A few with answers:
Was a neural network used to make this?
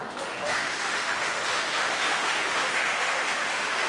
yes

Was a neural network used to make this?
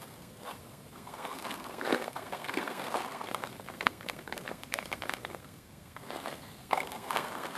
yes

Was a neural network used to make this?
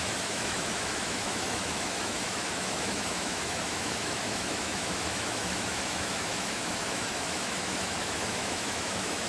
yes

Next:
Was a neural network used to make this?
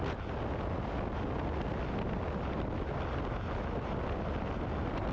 no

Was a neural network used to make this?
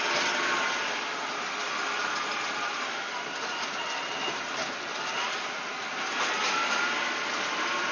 no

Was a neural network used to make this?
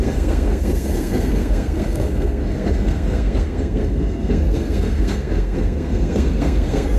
yes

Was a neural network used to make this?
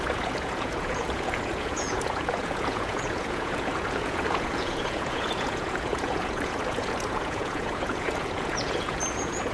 yes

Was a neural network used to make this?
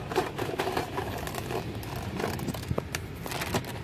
yes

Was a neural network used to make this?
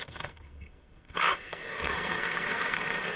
yes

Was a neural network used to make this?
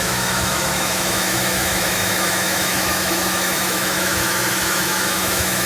yes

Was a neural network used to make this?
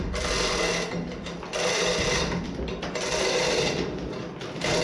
no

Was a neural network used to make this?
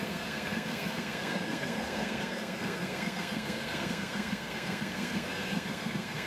yes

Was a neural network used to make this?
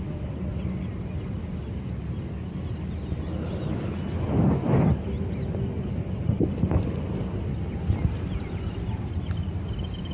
no